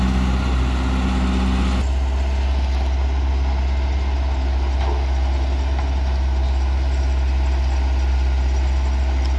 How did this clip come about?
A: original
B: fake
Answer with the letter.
A